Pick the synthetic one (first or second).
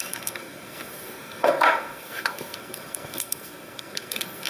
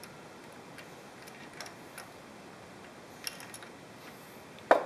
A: first